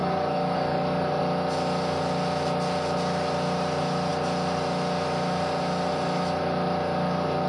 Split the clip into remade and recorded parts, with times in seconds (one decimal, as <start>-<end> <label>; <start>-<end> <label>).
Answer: 0.0-1.2 remade; 1.2-7.5 recorded